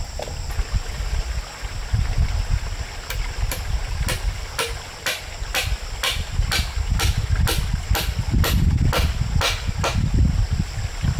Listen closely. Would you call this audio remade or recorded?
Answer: recorded